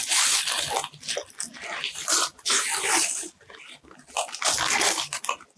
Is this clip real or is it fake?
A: real